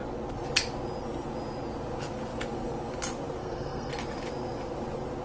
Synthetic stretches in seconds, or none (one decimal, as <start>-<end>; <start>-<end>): 3.4-3.9